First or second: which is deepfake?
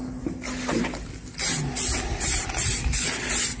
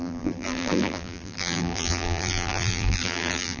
second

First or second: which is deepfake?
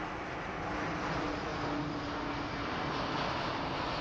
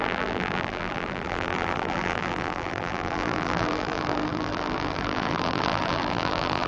second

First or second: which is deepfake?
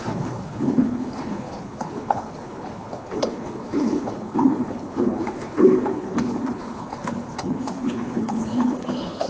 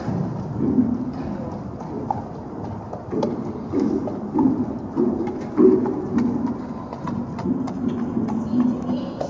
first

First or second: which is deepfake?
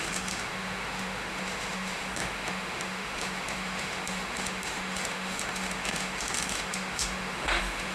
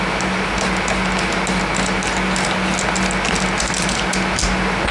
first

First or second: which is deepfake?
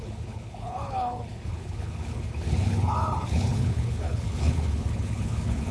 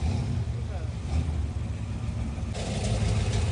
first